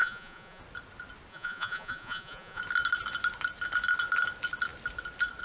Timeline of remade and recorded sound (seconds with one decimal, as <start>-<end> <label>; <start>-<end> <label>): 0.0-0.6 remade; 0.6-1.3 recorded; 1.3-2.6 remade; 2.6-5.4 recorded